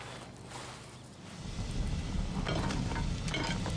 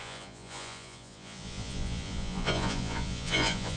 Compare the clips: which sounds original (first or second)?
first